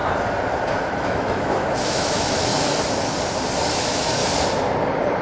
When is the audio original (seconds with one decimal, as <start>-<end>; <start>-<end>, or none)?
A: 0.0-0.8; 2.5-3.7; 4.2-5.2

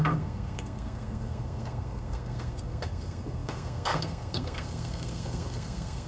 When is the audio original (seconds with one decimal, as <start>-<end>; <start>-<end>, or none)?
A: none

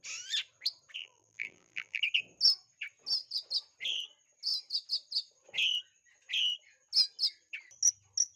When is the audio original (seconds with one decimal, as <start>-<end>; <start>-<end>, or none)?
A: 0.0-1.0; 2.0-8.4

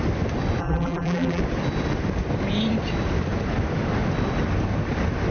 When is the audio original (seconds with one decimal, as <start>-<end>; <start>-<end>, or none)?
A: 0.0-0.6; 1.4-5.3

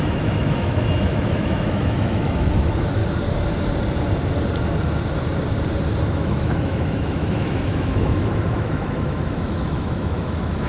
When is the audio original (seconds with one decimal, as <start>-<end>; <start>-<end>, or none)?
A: 3.0-6.1